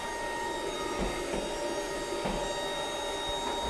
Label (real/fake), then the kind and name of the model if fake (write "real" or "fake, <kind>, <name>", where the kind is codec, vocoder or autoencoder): real